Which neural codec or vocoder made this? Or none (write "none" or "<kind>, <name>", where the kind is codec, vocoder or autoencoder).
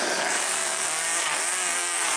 codec, DAC